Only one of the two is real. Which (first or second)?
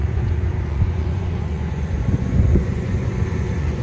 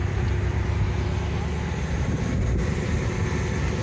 second